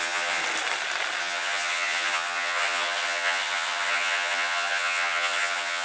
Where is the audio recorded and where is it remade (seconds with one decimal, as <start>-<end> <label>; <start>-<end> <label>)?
0.0-0.4 remade; 0.4-1.2 recorded; 1.2-5.8 remade